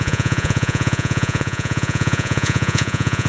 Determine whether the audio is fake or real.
fake